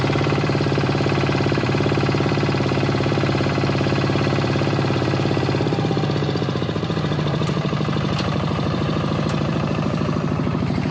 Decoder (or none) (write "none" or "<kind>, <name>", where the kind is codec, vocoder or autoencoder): vocoder, BigVGAN v2